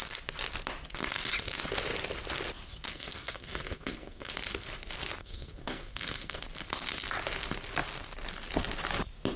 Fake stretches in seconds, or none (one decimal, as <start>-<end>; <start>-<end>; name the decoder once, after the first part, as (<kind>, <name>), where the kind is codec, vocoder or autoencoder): 2.9-4.3 (codec, SNAC); 5.2-6.4